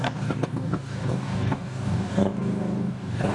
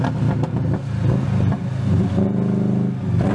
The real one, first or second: second